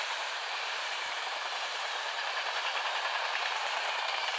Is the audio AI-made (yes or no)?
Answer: yes